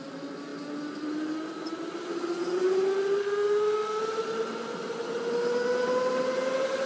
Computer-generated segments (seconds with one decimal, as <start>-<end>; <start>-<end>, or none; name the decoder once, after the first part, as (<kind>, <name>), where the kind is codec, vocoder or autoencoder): 3.2-4.0 (autoencoder, DAC-VAE)